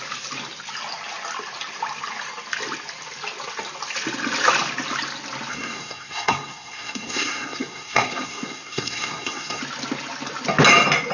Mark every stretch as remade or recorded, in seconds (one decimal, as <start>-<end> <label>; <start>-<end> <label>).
0.0-5.5 recorded; 5.5-9.6 remade; 9.6-11.1 recorded